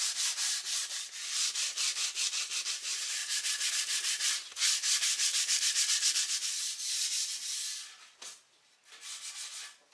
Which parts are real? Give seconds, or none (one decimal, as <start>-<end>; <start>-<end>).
0.0-9.9